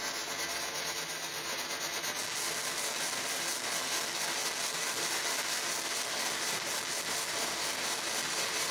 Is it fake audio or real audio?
real